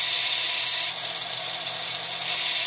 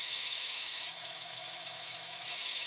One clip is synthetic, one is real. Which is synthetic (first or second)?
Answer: second